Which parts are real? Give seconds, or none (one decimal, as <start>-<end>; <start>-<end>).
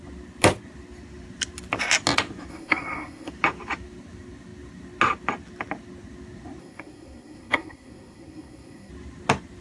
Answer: 0.0-2.5; 3.3-6.6; 8.9-9.6